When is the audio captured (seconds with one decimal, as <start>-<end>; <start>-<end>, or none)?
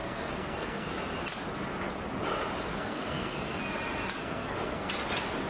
0.9-2.7; 3.6-4.2; 4.9-5.5